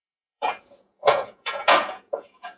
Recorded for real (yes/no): no